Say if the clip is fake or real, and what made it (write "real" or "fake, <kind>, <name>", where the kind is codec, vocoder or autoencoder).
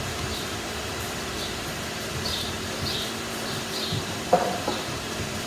fake, vocoder, BigVGAN v2